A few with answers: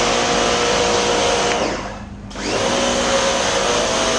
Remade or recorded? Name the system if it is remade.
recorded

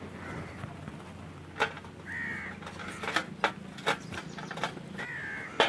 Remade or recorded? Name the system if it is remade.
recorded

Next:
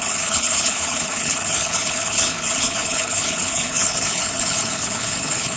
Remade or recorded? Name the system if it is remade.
remade, codec, HILCodec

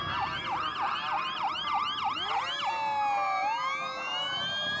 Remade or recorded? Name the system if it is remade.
recorded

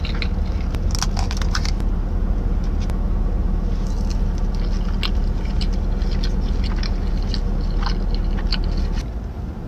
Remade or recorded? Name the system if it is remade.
recorded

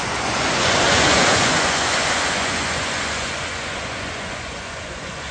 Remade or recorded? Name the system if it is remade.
remade, vocoder, Vocos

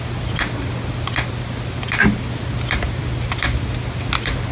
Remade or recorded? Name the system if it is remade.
recorded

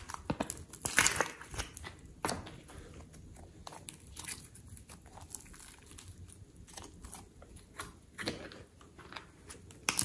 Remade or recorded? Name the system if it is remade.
recorded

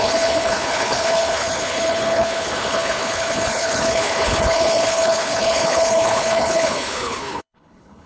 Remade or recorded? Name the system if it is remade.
remade, codec, HILCodec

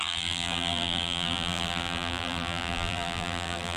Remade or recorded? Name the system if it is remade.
remade, vocoder, BigVGAN v2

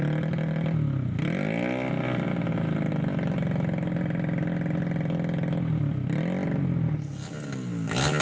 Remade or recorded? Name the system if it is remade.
recorded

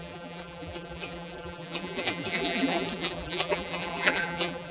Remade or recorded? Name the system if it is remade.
remade, vocoder, BigVGAN v2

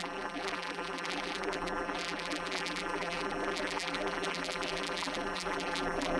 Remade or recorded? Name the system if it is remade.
remade, vocoder, BigVGAN v2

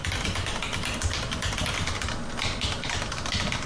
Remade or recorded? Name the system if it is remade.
recorded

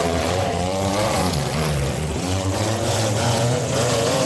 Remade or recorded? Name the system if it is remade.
remade, vocoder, Vocos